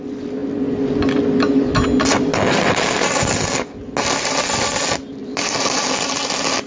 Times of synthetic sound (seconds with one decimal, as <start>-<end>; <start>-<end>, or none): none